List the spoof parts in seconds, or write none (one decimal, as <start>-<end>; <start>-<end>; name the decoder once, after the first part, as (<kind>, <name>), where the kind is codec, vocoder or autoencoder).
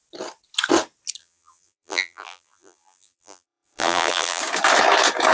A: 1.2-4.4 (vocoder, BigVGAN v2)